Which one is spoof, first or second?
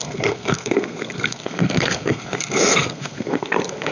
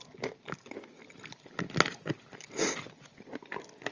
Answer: first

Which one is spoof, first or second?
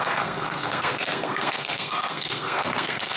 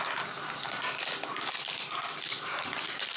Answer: first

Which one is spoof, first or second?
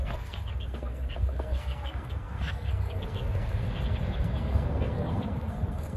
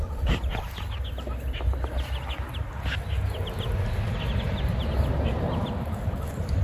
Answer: first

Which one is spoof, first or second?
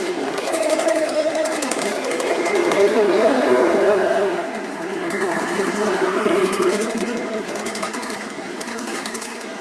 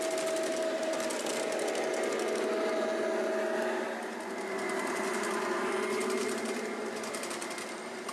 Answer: first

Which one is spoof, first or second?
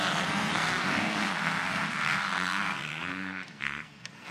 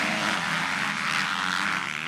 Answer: first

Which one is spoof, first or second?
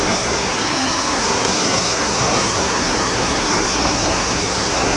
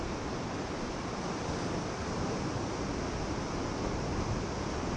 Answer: first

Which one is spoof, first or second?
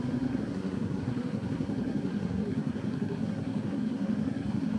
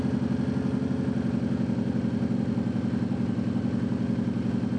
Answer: first